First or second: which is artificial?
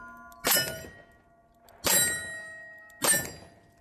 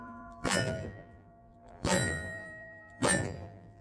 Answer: second